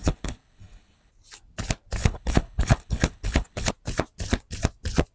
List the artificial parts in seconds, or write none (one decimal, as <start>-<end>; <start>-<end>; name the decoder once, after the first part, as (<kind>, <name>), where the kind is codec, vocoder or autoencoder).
0.0-1.1 (codec, HILCodec); 2.0-3.7